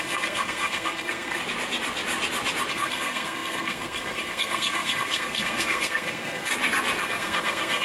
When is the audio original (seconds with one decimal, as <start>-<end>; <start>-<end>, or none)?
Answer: 1.4-2.7; 6.5-7.0